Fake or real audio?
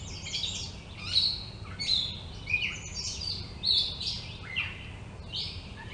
real